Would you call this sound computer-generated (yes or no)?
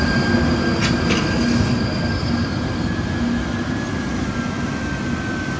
no